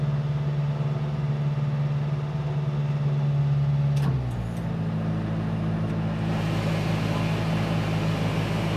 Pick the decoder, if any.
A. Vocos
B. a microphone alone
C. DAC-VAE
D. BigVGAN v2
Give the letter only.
B